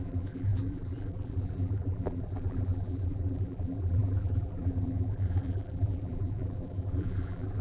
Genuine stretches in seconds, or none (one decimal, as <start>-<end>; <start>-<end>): none